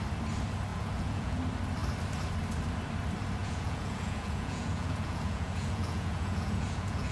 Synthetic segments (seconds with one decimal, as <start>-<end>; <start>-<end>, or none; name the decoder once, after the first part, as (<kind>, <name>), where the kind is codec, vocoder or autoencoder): 0.7-1.4 (vocoder, Vocos); 3.4-7.1

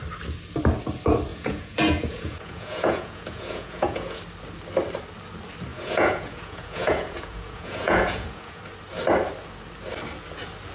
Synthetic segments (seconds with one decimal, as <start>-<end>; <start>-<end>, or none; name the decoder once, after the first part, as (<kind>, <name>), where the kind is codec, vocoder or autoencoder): 1.3-4.2 (vocoder, Vocos); 5.7-8.6

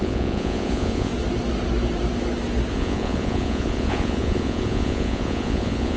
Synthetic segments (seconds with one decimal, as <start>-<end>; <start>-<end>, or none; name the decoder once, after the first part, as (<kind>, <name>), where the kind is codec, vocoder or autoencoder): 0.0-1.1 (vocoder, Vocos); 2.7-6.0

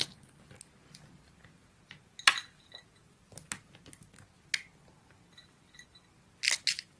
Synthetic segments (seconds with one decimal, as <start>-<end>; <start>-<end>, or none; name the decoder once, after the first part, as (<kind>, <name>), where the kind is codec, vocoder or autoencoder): none

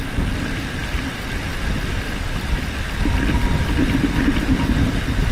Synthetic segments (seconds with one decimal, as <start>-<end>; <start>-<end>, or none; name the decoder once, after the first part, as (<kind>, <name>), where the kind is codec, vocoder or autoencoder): none

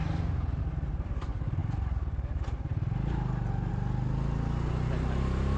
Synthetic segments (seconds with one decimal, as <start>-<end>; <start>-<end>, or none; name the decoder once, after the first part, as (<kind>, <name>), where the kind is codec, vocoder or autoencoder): none

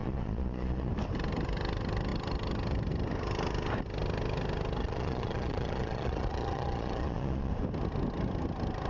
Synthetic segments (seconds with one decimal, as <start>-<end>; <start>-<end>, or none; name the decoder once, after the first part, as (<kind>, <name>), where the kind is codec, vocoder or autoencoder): 0.0-0.9 (vocoder, Vocos); 4.8-7.5

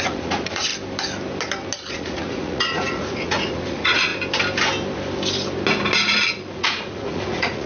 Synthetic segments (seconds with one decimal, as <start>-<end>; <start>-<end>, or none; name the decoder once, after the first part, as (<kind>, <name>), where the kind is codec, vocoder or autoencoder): 0.0-0.7 (vocoder, Vocos); 1.9-4.1; 6.5-7.7